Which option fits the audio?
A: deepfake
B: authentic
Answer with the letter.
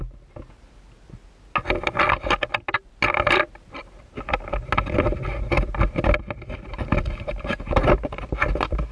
B